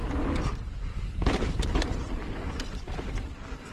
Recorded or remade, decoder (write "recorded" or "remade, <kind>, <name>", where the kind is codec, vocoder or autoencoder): recorded